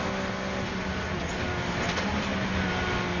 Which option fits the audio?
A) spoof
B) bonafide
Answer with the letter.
B